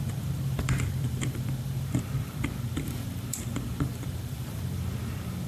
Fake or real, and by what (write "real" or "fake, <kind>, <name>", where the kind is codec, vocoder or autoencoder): fake, vocoder, BigVGAN v2